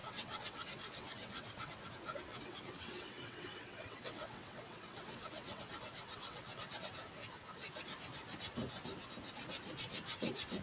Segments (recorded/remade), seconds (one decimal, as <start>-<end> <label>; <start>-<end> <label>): 0.0-1.8 remade; 1.8-2.3 recorded; 2.3-5.6 remade; 5.6-6.0 recorded; 6.0-6.9 remade; 6.9-10.6 recorded